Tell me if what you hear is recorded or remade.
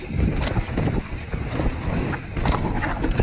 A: recorded